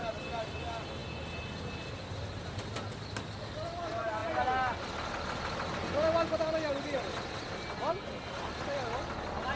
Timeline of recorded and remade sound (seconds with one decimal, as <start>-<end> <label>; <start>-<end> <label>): 0.0-9.6 recorded

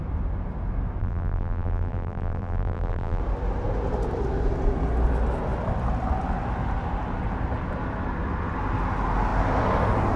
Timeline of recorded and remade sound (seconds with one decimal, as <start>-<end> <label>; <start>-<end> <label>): 0.0-1.0 recorded; 1.0-3.2 remade; 3.2-10.2 recorded

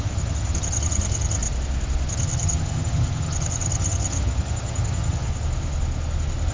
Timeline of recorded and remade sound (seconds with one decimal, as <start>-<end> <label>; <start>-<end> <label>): 0.0-1.4 remade; 1.4-2.1 recorded; 2.1-5.3 remade; 5.3-6.5 recorded